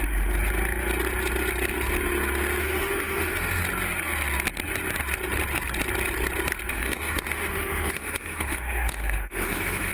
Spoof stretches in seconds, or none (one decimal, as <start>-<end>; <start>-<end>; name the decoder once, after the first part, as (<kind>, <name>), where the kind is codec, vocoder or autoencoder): 2.6-3.6 (autoencoder, DAC-VAE); 6.7-9.9